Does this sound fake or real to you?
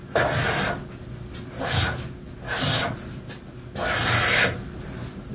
real